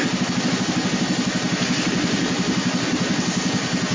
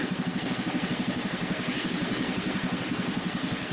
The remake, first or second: second